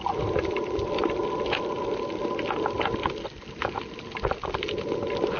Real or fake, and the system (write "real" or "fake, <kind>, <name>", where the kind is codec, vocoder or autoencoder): real